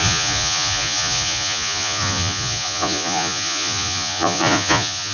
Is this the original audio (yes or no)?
no